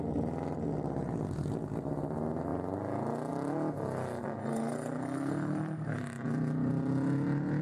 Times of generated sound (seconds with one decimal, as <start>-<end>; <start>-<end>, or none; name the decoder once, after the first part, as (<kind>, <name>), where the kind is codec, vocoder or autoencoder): 4.4-6.0 (codec, SNAC)